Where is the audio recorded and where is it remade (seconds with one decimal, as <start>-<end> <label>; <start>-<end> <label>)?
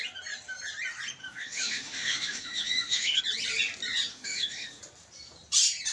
0.0-1.2 recorded; 1.2-3.2 remade; 3.2-4.1 recorded; 4.1-4.8 remade; 4.8-5.9 recorded